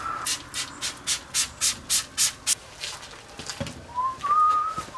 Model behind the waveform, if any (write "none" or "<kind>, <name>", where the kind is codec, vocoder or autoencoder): none